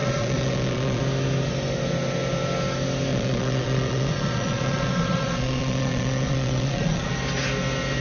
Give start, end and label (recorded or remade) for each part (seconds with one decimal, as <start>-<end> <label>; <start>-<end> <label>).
0.0-1.0 remade; 1.0-3.1 recorded; 3.1-7.1 remade; 7.1-8.0 recorded